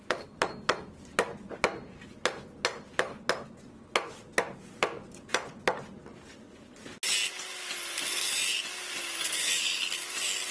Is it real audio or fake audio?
real